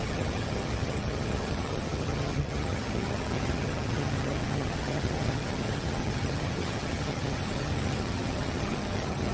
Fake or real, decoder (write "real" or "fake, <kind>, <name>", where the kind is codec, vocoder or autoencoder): fake, vocoder, HiFi-GAN